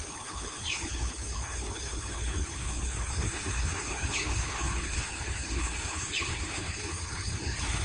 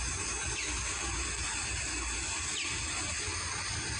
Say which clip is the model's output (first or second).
first